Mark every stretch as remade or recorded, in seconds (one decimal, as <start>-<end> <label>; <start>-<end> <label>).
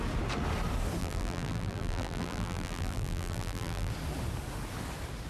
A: 0.0-1.0 recorded; 1.0-3.9 remade; 3.9-5.3 recorded